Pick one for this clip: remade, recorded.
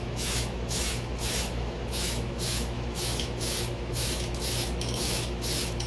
remade